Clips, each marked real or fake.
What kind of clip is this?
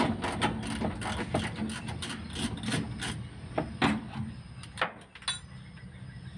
real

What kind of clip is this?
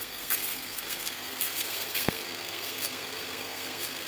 fake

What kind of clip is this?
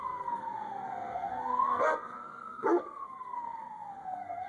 fake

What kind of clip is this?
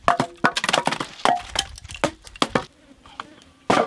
real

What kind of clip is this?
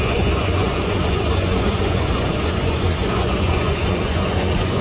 fake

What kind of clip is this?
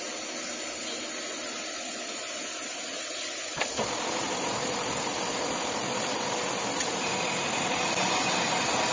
real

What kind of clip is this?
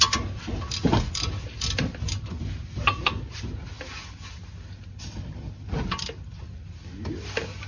real